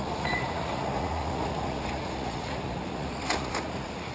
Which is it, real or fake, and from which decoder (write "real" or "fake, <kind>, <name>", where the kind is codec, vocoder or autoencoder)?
fake, vocoder, Vocos